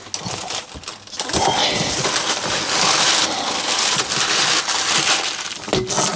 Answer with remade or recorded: recorded